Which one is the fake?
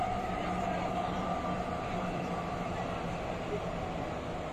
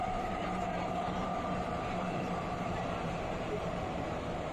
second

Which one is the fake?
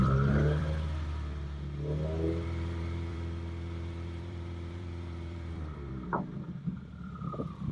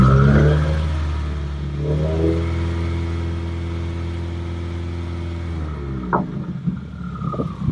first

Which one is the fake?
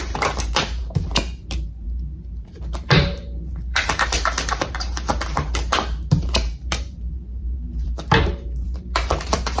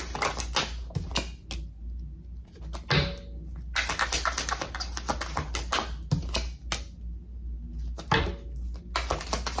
first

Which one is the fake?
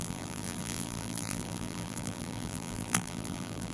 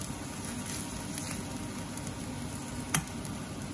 first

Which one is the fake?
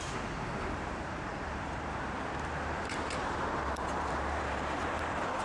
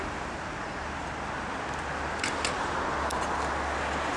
first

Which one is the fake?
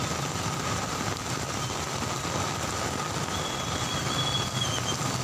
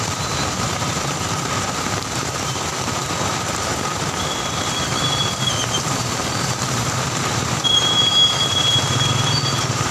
second